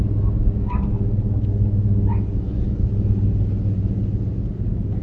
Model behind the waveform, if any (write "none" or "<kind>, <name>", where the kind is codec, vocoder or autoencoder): none